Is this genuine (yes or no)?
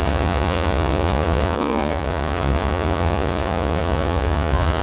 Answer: no